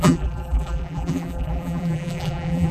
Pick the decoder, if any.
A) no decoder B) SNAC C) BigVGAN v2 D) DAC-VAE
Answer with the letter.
C